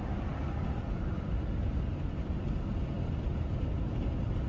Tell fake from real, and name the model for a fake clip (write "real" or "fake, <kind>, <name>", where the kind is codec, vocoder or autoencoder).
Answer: real